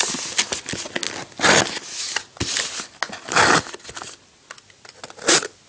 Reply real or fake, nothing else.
real